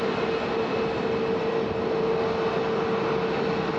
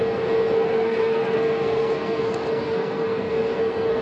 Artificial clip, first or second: second